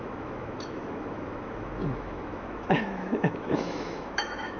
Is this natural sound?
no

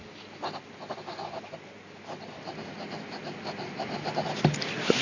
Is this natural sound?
yes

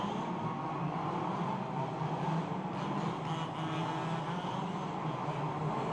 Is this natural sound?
yes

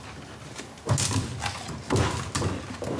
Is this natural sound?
yes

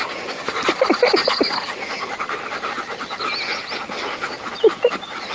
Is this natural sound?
yes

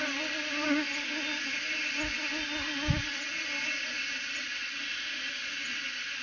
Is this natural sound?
yes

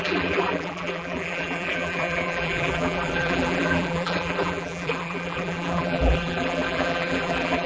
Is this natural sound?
no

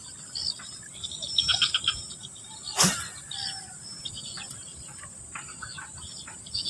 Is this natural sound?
yes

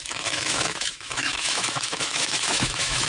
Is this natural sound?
no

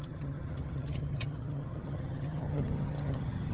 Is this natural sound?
no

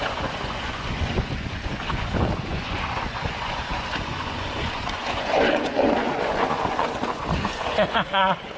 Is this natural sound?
no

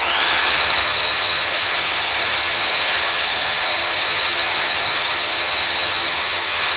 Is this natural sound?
no